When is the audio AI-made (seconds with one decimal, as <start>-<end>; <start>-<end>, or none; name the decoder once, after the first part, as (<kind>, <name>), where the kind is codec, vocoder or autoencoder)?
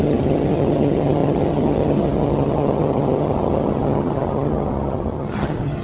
0.0-5.8 (vocoder, HiFi-GAN)